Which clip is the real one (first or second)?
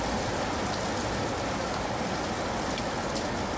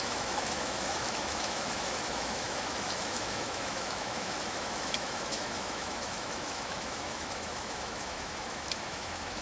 first